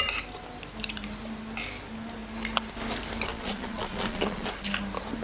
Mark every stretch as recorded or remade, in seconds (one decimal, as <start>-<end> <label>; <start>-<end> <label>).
0.0-3.3 recorded; 3.3-4.5 remade; 4.5-5.2 recorded